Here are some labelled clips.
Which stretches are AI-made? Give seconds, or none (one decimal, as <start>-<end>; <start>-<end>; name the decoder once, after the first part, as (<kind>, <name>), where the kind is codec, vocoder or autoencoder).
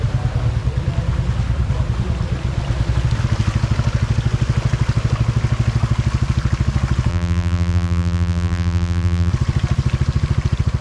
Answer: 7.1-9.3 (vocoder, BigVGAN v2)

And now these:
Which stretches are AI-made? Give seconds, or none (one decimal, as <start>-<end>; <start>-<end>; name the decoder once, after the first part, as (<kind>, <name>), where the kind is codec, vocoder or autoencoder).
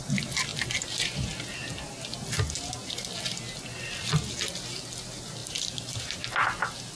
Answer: 5.4-6.2 (vocoder, BigVGAN v2)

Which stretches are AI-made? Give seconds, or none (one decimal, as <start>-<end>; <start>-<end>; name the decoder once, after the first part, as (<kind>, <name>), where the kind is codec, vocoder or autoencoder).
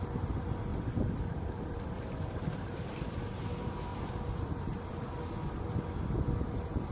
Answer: 0.7-1.5 (vocoder, BigVGAN v2); 3.9-4.9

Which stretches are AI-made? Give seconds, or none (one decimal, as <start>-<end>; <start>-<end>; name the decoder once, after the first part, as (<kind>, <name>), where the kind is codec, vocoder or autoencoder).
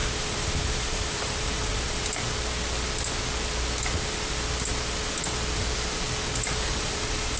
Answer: 0.0-2.0 (vocoder, BigVGAN v2); 6.4-7.4